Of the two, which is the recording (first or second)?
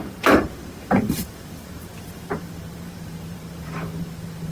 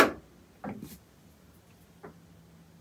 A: second